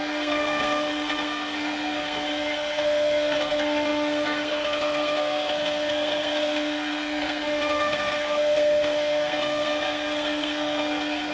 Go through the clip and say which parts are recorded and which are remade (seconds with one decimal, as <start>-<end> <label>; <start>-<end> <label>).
0.0-11.3 remade